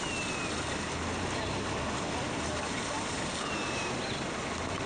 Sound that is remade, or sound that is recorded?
recorded